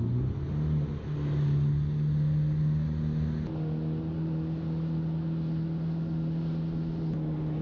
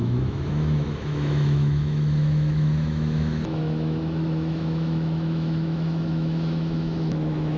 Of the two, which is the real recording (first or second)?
first